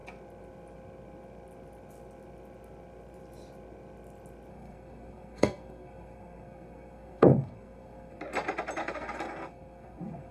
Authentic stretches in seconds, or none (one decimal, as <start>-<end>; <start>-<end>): 0.0-4.5; 8.2-8.8

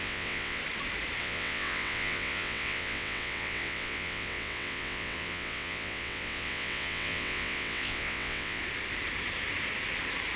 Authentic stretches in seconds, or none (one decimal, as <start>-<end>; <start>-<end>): 0.6-1.2; 8.6-10.4

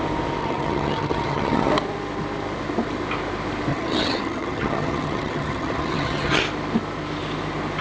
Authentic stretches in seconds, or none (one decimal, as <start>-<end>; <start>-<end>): 0.0-0.4; 1.7-3.7; 6.4-7.8

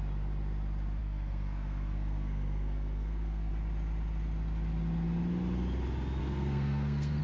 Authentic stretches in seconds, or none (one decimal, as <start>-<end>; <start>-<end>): 0.0-1.0; 3.5-6.2

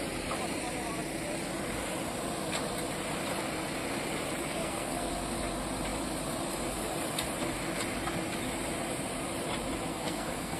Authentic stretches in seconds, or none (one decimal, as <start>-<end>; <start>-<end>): 0.0-4.4; 5.1-9.9